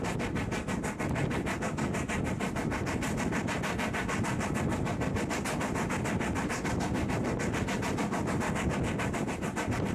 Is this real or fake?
real